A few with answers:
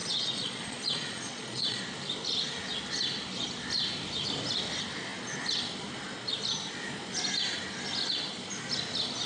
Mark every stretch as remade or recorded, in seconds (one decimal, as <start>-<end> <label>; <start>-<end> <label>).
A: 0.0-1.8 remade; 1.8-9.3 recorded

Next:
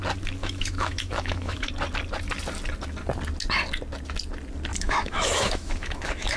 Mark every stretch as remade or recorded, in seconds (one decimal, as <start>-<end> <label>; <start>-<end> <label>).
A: 0.0-0.4 recorded; 0.4-1.7 remade; 1.7-4.7 recorded; 4.7-6.4 remade

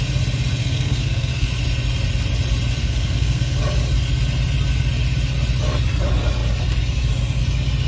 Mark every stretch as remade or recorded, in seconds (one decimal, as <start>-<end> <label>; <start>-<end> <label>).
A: 0.0-0.6 recorded; 0.6-1.5 remade; 1.5-2.8 recorded; 2.8-3.6 remade; 3.6-7.9 recorded

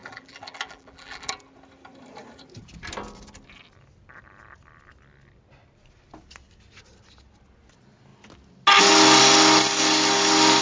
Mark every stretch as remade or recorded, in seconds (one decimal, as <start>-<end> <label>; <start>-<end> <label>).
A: 0.0-1.3 remade; 1.3-10.6 recorded

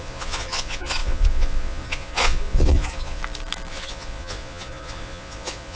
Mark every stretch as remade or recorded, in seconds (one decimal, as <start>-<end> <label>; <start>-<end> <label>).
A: 0.0-3.2 remade; 3.2-3.7 recorded; 3.7-5.8 remade

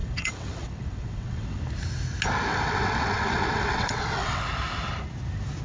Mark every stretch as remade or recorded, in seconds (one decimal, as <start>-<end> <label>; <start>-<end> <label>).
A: 0.0-1.6 remade; 1.6-2.5 recorded; 2.5-4.4 remade; 4.4-5.6 recorded